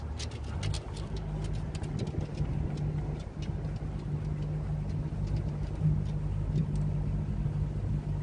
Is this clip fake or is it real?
real